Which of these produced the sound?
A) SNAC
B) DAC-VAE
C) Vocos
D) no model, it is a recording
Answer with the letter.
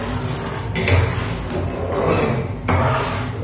D